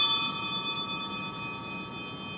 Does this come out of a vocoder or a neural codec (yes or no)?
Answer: no